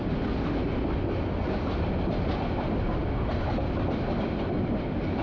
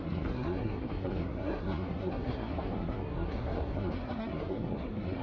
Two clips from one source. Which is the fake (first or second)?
second